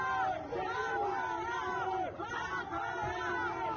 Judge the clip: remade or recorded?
recorded